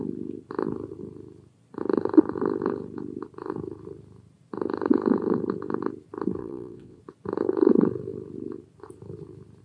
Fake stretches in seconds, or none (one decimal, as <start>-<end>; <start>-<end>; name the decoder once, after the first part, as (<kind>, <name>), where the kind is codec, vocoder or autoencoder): 6.4-7.0 (vocoder, WaveNeXt)